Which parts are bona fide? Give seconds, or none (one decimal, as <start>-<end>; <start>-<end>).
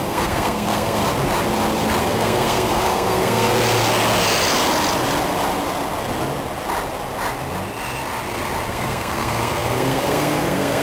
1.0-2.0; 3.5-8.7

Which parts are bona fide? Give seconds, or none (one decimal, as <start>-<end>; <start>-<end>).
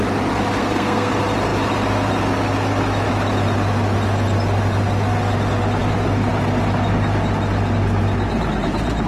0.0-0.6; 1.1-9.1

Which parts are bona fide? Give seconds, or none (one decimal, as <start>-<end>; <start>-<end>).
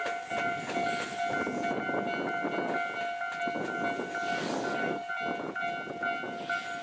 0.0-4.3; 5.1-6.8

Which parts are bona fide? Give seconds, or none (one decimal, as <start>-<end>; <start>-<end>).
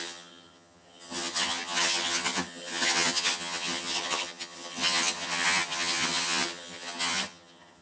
none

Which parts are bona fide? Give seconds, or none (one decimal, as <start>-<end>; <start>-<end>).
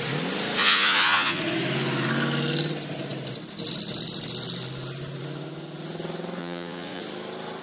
0.0-0.6; 1.4-6.4; 7.0-7.6